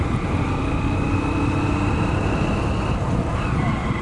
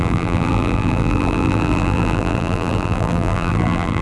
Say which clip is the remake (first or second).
second